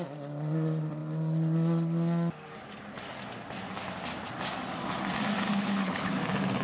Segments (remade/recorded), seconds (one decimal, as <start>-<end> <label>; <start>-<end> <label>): 0.0-5.5 recorded; 5.5-6.1 remade; 6.1-6.6 recorded